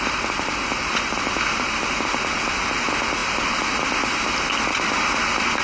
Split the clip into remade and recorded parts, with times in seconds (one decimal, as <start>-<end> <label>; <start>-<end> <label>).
0.0-5.6 recorded